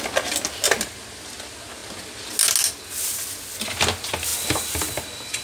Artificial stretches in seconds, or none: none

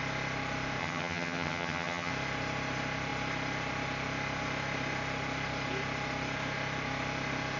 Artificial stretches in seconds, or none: 0.8-2.1 (vocoder, HiFi-GAN)

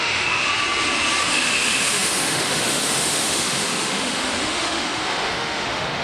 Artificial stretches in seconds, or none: 0.0-0.5 (autoencoder, DAC-VAE); 1.2-6.0

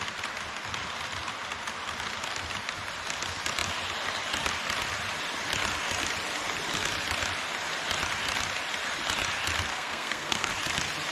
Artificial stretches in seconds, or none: 9.7-10.5 (codec, SNAC)

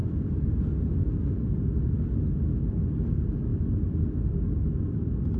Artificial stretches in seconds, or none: none

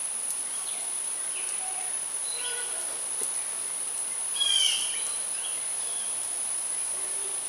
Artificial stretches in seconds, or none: none

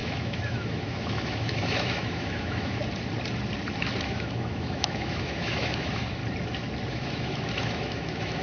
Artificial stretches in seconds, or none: 0.0-2.8 (autoencoder, DAC-VAE); 4.0-6.2; 6.9-8.4